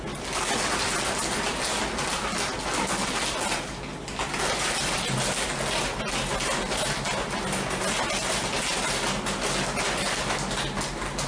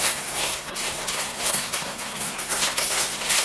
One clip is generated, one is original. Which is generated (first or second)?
second